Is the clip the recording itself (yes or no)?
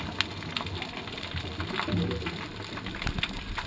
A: yes